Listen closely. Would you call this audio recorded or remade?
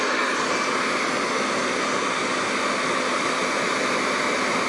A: recorded